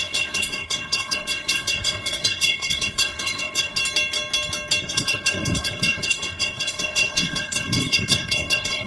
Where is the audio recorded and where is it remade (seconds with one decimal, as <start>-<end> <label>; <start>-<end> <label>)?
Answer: 0.0-3.8 remade; 3.8-4.8 recorded; 4.8-8.9 remade